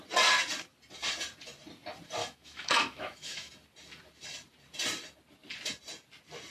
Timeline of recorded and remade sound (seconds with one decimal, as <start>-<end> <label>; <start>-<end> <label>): 0.0-2.2 recorded; 2.2-3.5 remade; 3.5-6.5 recorded